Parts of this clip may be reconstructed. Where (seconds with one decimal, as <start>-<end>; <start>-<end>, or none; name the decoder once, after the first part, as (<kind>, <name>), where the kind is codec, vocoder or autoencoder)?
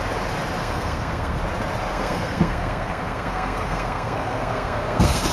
0.6-1.4 (codec, SNAC); 1.9-5.3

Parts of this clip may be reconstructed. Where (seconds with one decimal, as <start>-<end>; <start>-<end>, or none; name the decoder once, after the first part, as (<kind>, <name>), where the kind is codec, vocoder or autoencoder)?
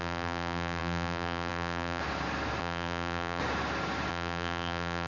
0.0-2.0 (vocoder, BigVGAN v2); 2.6-3.4; 4.1-5.1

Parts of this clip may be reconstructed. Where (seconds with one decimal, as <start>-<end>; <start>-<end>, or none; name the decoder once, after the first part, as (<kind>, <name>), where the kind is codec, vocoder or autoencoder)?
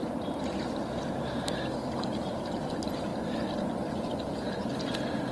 0.0-3.1 (vocoder, BigVGAN v2)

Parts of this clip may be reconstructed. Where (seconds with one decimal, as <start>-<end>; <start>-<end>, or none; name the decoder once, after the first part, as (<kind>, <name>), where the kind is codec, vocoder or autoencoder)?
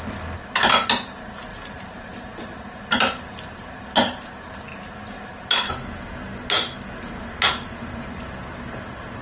1.5-3.4 (vocoder, BigVGAN v2); 4.7-5.7